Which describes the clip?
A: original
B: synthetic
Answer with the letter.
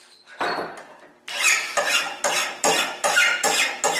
A